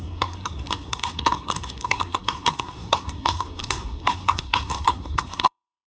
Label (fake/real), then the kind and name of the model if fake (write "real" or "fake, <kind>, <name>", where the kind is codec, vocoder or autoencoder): fake, codec, SNAC